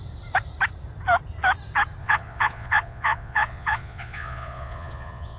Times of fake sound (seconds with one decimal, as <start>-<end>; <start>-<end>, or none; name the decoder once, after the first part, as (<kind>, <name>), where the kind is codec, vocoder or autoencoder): 2.0-5.4 (vocoder, Vocos)